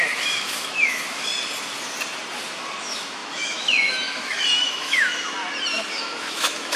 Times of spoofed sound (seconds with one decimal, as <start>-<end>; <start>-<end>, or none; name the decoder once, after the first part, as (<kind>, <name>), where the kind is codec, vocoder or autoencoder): 0.0-1.3 (autoencoder, DAC-VAE); 2.8-5.4; 5.9-6.8